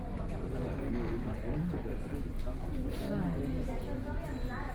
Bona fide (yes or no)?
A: yes